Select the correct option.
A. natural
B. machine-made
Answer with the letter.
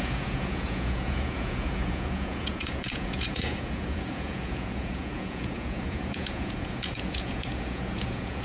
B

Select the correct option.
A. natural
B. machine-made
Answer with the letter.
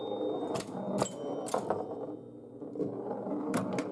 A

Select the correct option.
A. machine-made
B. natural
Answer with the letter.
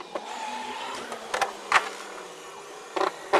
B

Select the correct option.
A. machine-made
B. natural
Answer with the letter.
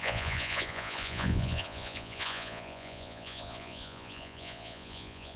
A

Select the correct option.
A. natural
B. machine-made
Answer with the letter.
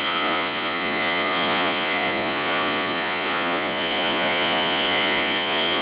B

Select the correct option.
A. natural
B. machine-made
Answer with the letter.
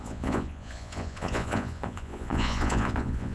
B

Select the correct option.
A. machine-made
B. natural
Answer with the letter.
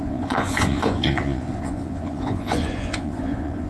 A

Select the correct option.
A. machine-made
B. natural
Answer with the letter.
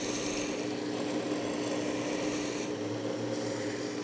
B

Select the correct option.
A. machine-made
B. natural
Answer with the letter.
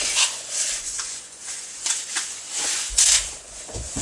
A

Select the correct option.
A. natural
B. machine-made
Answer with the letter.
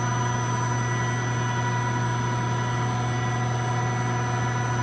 A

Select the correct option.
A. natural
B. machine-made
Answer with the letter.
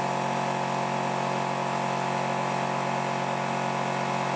A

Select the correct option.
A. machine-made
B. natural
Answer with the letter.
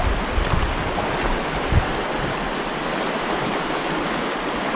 B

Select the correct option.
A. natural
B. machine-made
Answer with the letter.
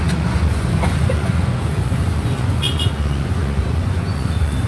B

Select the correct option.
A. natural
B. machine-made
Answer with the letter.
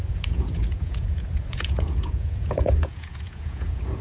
B